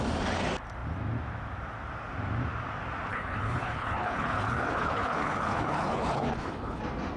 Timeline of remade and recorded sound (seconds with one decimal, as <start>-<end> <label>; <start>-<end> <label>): 0.0-3.1 recorded; 3.1-6.8 remade; 6.8-7.2 recorded